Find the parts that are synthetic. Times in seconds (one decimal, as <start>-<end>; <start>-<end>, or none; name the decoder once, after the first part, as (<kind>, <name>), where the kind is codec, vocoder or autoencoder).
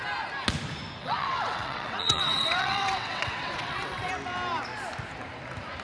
1.0-4.1 (vocoder, WaveNeXt)